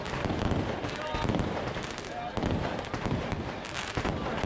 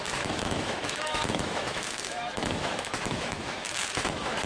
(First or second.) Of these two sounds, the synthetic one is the second